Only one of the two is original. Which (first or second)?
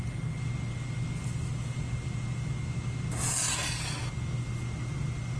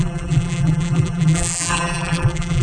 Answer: first